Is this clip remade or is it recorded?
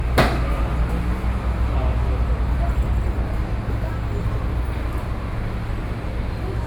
recorded